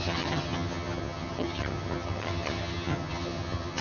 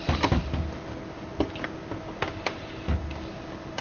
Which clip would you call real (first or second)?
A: second